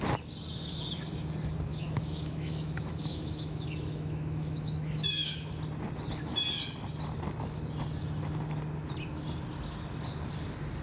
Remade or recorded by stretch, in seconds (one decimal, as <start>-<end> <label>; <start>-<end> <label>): 0.0-1.7 recorded; 1.7-5.5 remade; 5.5-10.8 recorded